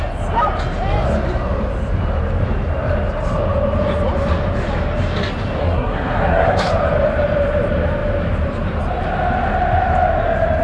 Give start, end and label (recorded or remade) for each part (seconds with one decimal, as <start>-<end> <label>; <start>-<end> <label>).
0.0-5.6 recorded; 5.6-6.7 remade; 6.7-10.6 recorded